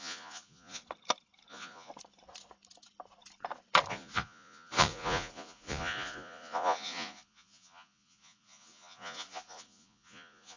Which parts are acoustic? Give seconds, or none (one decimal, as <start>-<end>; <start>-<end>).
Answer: 0.8-1.5; 1.9-3.9

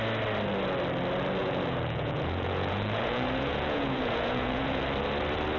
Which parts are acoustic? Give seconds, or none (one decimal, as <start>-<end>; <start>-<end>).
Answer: 0.0-1.4; 4.8-5.6

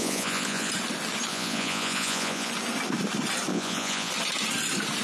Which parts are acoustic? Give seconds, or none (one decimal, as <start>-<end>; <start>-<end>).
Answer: 0.7-1.3; 2.5-3.5; 4.1-5.0

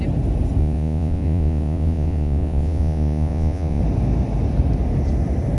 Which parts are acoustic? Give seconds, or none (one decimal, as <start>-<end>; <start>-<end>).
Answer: 0.0-0.6; 3.8-5.6

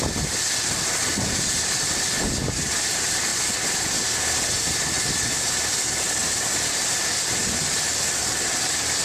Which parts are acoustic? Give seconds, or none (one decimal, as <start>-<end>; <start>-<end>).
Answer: 0.0-9.0

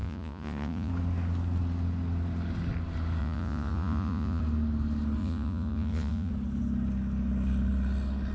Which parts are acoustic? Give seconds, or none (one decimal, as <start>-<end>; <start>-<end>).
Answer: 0.9-3.2; 4.4-5.2; 6.3-8.3